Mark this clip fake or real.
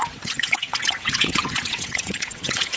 fake